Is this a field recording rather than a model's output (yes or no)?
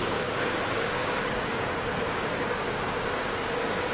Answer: no